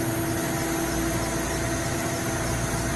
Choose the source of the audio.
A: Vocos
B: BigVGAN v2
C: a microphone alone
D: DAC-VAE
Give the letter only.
C